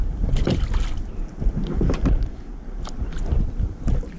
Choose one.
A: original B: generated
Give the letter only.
A